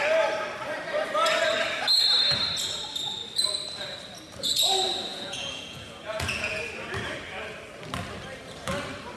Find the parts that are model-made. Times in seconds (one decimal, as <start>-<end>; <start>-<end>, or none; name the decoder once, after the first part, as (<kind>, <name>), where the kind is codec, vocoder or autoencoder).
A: 5.1-6.6 (vocoder, Vocos)

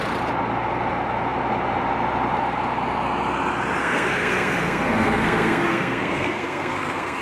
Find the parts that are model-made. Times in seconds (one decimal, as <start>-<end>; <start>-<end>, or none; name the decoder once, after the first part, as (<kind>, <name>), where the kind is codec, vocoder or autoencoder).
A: 3.8-7.2 (codec, SNAC)